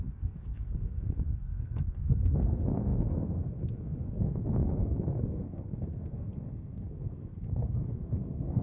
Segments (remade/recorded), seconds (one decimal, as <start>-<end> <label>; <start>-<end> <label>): 0.0-8.6 remade